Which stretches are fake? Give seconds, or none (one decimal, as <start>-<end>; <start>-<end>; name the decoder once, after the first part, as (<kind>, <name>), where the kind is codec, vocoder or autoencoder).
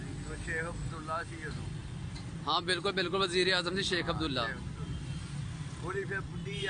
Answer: none